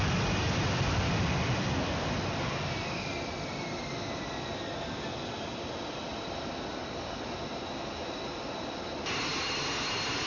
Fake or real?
real